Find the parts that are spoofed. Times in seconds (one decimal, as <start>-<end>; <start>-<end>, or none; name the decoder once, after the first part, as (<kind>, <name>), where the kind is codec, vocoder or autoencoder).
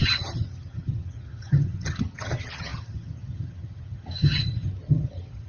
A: 0.0-5.5 (vocoder, HiFi-GAN)